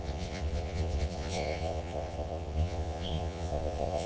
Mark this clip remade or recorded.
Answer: remade